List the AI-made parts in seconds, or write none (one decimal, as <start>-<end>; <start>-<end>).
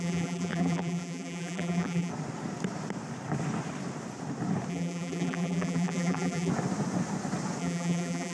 0.0-2.1; 4.7-6.5; 7.6-8.3